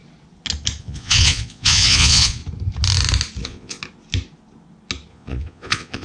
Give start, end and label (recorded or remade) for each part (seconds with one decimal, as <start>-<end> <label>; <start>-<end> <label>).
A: 0.0-0.8 recorded; 0.8-2.4 remade; 2.4-3.4 recorded; 3.4-3.8 remade; 3.8-5.1 recorded; 5.1-6.0 remade